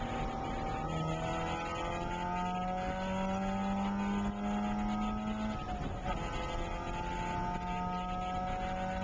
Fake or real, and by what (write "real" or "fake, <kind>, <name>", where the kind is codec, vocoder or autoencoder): real